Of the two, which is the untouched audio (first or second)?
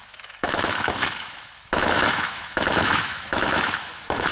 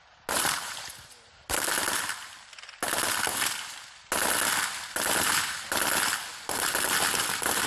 second